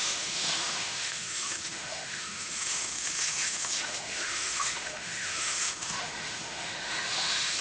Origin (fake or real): fake